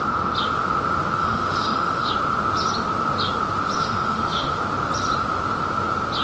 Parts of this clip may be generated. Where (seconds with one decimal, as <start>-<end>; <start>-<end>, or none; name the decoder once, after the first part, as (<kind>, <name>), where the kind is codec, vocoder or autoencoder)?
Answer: 1.2-2.1 (autoencoder, DAC-VAE); 3.8-4.6